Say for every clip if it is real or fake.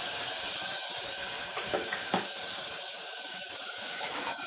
fake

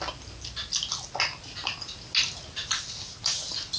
real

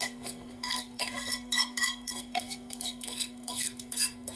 fake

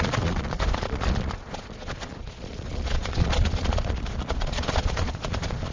fake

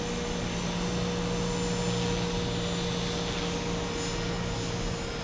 real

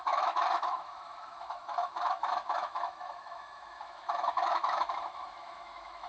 fake